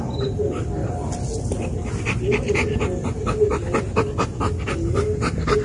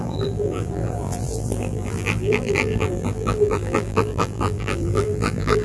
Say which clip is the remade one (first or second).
second